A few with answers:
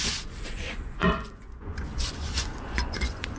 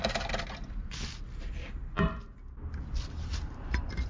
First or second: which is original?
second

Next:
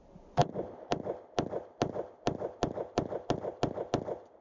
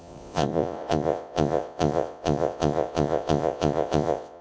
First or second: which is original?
first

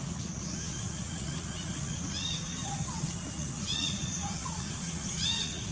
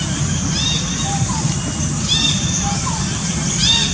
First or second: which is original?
second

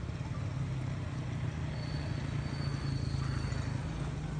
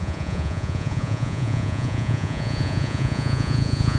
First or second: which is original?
first